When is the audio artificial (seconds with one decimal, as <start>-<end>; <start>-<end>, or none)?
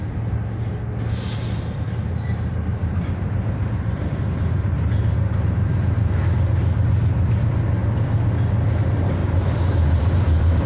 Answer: 2.8-6.2; 9.2-10.7